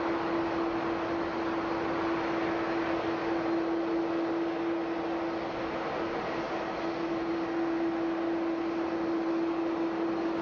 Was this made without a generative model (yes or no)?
yes